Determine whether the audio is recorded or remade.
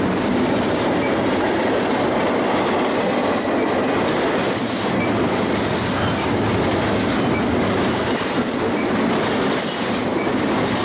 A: recorded